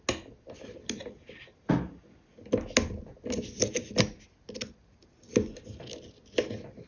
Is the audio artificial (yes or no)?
no